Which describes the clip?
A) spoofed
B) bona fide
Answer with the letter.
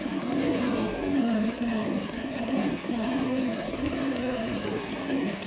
A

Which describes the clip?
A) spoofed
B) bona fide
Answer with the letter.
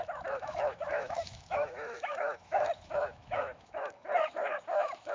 A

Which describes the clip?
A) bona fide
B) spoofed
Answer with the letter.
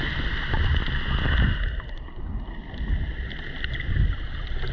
A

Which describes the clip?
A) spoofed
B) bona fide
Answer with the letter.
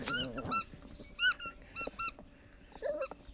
B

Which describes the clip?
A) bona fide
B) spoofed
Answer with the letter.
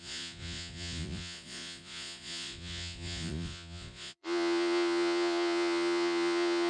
B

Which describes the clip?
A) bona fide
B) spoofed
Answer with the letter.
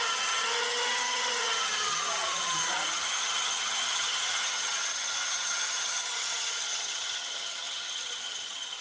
B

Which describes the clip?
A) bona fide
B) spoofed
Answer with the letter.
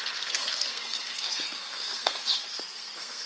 B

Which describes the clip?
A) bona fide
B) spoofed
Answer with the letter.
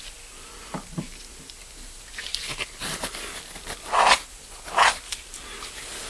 A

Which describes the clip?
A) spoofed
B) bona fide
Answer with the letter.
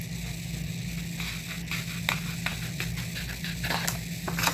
B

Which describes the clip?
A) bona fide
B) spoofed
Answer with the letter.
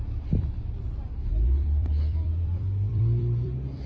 B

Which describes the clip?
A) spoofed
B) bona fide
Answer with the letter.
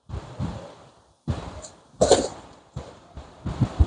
A